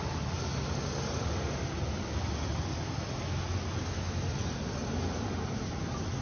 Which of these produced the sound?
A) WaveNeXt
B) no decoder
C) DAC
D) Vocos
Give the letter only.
B